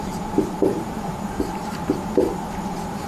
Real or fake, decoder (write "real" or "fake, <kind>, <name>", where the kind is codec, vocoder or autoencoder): fake, vocoder, BigVGAN v2